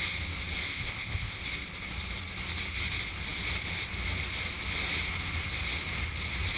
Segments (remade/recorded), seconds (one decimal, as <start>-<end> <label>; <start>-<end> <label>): 0.0-0.7 recorded; 0.7-1.4 remade; 1.4-6.6 recorded